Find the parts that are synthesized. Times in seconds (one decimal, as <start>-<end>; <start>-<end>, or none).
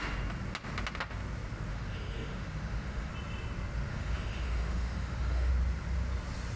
1.7-3.1; 3.9-5.5